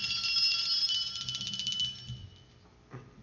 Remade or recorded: recorded